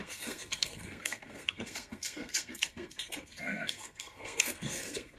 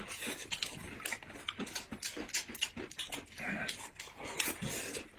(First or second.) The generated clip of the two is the first